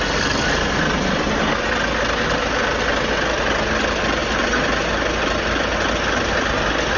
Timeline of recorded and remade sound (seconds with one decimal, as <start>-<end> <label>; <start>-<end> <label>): 0.0-7.0 recorded